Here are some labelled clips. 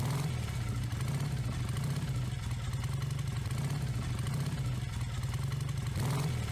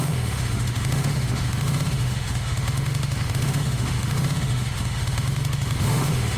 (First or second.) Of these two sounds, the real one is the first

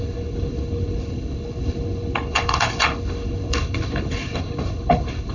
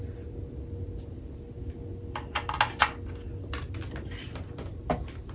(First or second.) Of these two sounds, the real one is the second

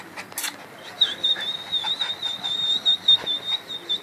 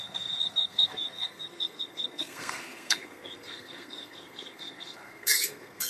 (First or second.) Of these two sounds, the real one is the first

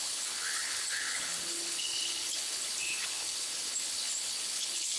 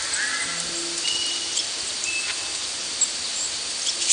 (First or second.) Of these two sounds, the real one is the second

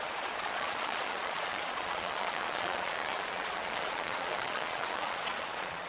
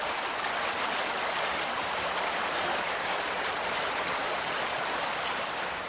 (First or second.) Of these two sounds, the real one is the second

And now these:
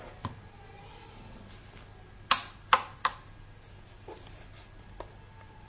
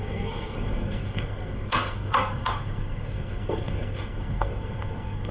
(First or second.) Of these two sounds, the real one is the first